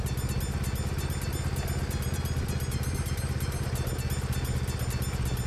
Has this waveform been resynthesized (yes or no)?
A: no